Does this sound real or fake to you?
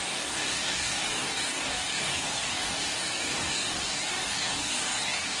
fake